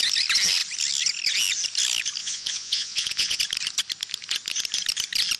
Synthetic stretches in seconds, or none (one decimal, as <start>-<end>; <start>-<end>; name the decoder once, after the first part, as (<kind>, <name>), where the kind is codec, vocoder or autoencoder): 2.2-3.4 (vocoder, Vocos)